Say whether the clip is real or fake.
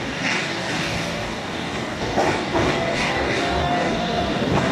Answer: fake